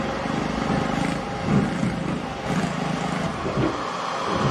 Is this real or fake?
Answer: real